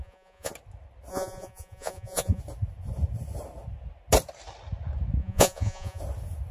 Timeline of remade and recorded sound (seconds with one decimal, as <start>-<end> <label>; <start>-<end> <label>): 0.0-0.5 remade; 0.5-1.1 recorded; 1.1-2.4 remade; 2.4-5.2 recorded; 5.2-6.0 remade; 6.0-6.5 recorded